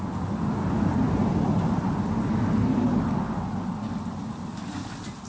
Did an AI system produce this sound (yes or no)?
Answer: no